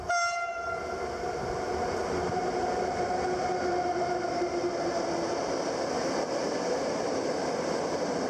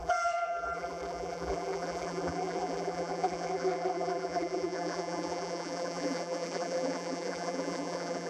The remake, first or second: second